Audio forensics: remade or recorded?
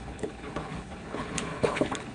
remade